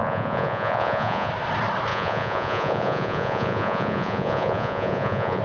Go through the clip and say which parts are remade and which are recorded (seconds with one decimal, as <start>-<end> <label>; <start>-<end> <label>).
0.0-1.3 remade; 1.3-1.9 recorded; 1.9-5.4 remade